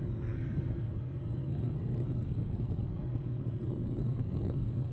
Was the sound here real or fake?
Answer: fake